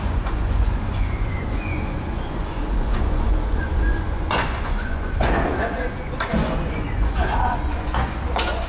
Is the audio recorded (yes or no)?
no